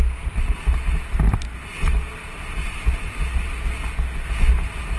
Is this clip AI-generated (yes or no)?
no